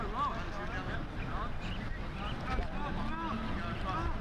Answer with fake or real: real